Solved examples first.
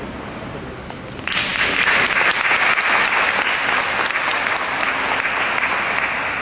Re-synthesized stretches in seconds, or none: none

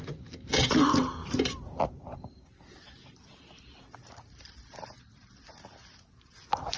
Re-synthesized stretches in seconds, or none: none